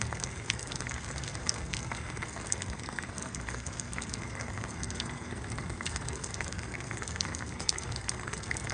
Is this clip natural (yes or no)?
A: no